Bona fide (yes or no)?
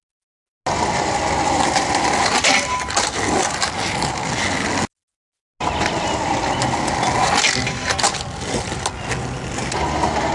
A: yes